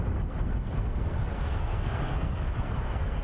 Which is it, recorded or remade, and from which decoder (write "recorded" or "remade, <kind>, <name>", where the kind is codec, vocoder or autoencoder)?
remade, codec, SNAC